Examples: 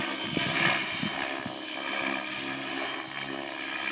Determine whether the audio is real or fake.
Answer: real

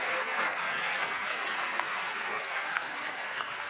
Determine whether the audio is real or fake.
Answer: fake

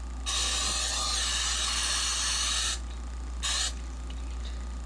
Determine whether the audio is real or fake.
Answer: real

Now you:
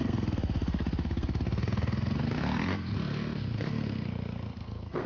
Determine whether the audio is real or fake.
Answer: fake